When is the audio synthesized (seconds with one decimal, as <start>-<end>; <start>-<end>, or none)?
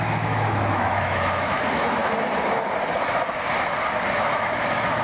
0.0-2.0; 4.2-5.0